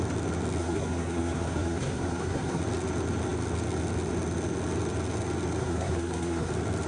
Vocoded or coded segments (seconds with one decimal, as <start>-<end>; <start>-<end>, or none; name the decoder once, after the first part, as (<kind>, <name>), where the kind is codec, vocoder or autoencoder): 0.6-2.6 (codec, SNAC); 5.6-6.5